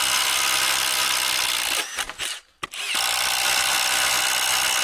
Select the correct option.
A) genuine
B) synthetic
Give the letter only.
A